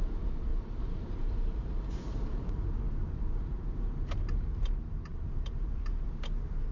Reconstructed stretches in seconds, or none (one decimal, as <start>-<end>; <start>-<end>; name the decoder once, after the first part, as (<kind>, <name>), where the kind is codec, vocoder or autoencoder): 0.5-4.5 (vocoder, BigVGAN v2); 5.1-5.9